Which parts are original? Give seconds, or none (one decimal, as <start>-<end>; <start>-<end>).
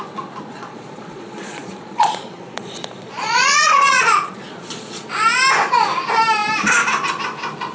0.0-0.5; 5.1-7.7